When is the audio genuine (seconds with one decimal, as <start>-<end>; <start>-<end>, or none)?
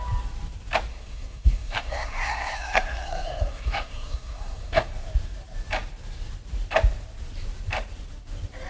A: 0.0-0.9; 4.9-8.7